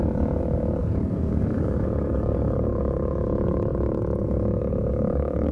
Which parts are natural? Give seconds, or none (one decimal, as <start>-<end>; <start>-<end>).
none